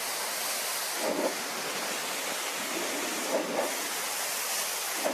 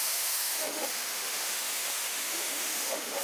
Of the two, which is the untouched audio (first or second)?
first